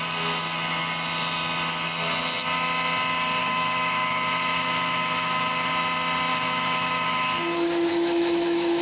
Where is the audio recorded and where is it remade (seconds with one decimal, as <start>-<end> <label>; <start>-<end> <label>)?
0.0-3.4 recorded; 3.4-5.7 remade; 5.7-6.3 recorded; 6.3-7.4 remade; 7.4-7.9 recorded; 7.9-8.8 remade